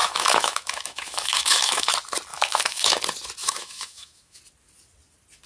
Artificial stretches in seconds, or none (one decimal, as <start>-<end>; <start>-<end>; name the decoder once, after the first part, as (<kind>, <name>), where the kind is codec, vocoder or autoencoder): 0.0-1.9 (autoencoder, DAC-VAE); 2.3-3.0; 3.4-4.4